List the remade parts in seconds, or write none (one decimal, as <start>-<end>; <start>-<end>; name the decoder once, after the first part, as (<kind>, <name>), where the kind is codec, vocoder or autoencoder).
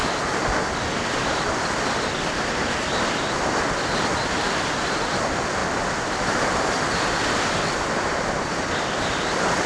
none